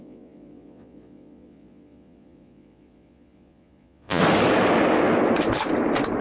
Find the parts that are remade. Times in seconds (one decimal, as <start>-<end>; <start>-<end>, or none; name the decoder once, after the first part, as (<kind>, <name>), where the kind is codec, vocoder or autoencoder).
0.0-4.2 (vocoder, Vocos)